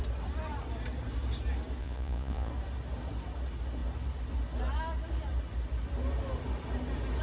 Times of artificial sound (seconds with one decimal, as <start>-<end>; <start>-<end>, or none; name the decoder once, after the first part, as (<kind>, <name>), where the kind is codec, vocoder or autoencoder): 1.8-2.5 (vocoder, Vocos)